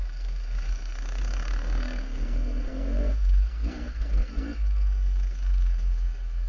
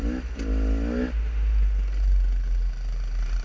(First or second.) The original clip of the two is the second